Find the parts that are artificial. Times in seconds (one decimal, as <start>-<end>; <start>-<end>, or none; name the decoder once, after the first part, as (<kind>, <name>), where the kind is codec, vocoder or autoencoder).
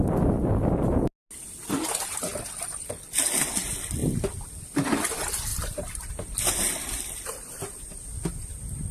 2.3-2.9 (vocoder, BigVGAN v2); 5.5-6.1